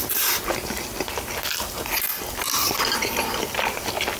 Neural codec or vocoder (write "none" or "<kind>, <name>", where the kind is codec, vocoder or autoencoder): none